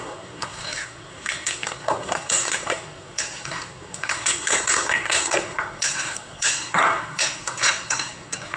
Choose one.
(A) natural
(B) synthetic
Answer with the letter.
B